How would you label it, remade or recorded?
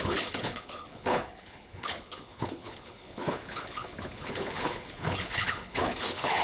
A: remade